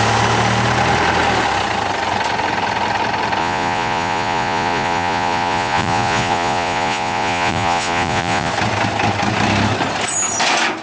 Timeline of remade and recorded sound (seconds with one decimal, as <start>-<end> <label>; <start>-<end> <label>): 0.0-3.4 recorded; 3.4-8.5 remade; 8.5-10.8 recorded